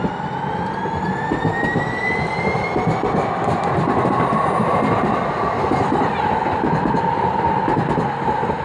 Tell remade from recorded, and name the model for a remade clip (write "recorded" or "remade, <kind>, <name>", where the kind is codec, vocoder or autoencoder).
recorded